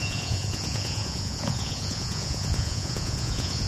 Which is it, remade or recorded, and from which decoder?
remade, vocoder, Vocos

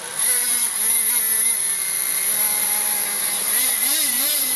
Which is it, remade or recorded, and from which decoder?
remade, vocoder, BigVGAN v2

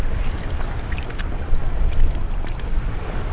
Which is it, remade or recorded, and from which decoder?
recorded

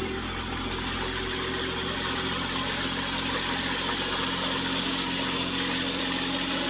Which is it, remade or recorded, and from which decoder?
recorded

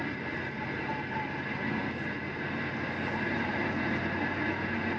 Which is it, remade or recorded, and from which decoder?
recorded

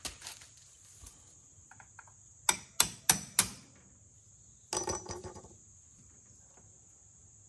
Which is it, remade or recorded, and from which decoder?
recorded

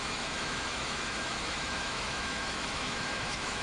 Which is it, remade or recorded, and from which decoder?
remade, autoencoder, DAC-VAE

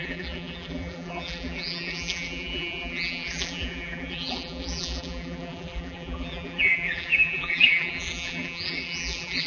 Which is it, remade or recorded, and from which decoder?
remade, vocoder, BigVGAN v2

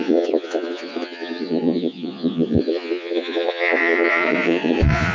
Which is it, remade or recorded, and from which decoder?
remade, vocoder, Vocos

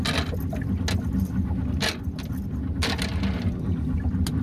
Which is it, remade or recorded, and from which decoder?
recorded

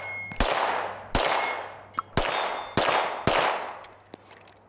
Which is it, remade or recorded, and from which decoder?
recorded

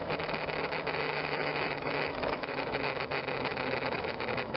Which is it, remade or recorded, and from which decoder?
remade, autoencoder, DAC-VAE